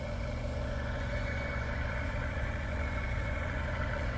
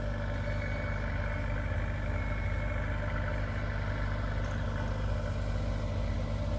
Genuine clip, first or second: second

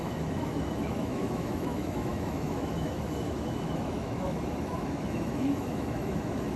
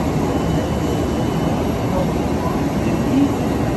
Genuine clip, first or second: second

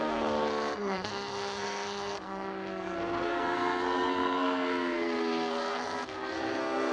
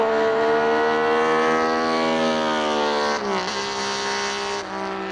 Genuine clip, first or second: second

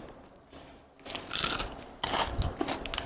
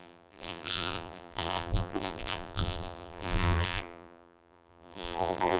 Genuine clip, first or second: first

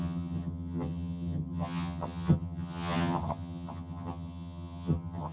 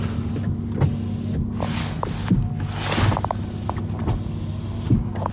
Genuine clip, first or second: second